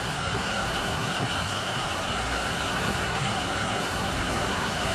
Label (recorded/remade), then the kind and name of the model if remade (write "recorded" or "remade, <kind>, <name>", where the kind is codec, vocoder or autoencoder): remade, codec, SNAC